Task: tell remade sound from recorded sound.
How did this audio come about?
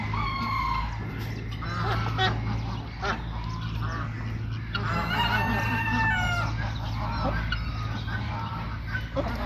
recorded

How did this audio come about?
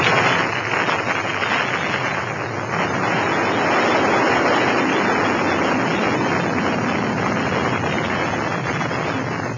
recorded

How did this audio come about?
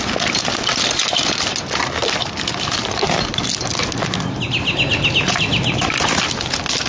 recorded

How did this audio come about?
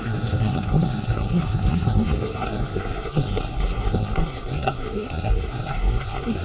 remade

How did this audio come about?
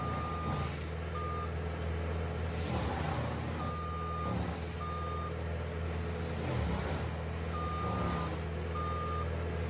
recorded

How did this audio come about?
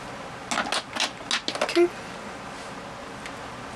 recorded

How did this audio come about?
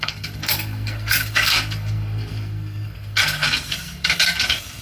remade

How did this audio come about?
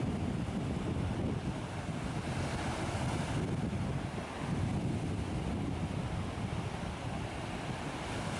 recorded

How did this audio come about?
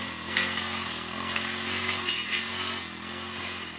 remade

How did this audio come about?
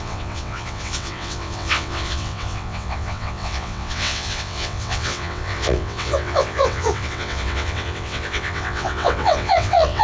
remade